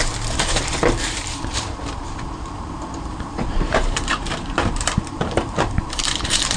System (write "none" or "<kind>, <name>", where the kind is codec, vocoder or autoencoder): vocoder, BigVGAN v2